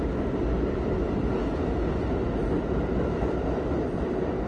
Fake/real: real